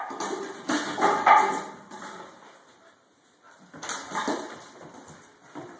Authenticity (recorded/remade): recorded